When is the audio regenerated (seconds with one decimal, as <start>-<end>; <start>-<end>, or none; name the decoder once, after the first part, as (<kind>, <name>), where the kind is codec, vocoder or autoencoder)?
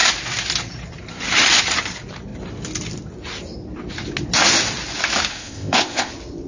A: 5.3-6.1 (codec, ZipCodec)